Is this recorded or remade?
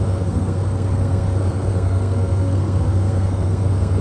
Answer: remade